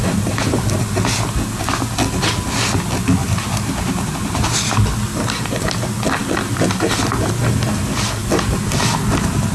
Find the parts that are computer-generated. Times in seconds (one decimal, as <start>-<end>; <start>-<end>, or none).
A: 3.2-4.6